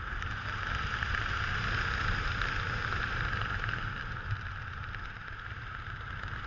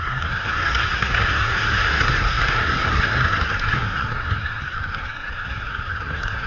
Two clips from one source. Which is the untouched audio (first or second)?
first